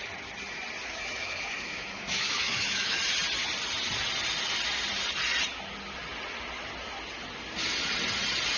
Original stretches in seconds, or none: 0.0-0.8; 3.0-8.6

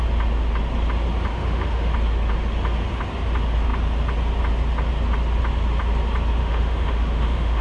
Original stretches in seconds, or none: 0.0-1.3; 1.9-6.4

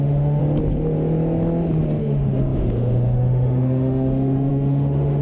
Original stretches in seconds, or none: 0.4-2.0

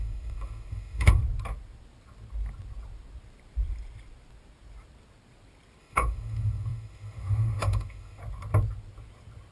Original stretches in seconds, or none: 1.2-5.8; 8.2-9.5

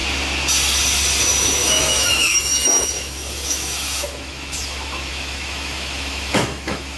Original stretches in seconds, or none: 0.0-1.2

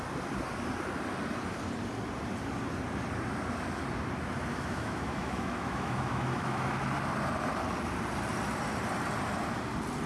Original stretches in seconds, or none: 0.0-4.5; 6.8-10.1

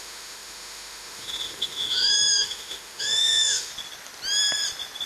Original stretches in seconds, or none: 3.7-5.1

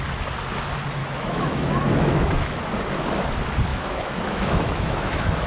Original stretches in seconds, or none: 0.0-1.0; 2.6-3.7